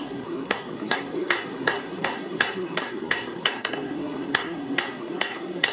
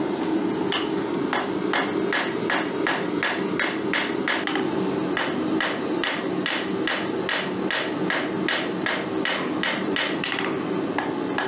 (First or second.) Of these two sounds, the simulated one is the first